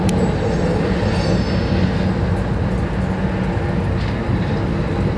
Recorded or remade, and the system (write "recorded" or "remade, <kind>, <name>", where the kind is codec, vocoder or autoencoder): recorded